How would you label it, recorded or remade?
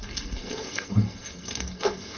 remade